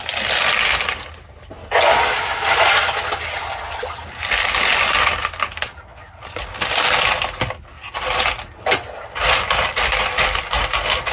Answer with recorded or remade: recorded